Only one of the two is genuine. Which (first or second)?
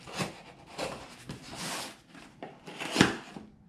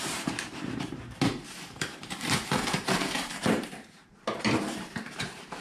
first